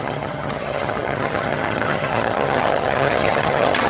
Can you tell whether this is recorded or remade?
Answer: remade